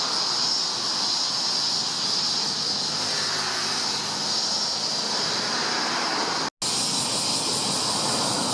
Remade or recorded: recorded